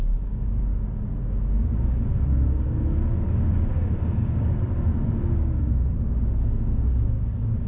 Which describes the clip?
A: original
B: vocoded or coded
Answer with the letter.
B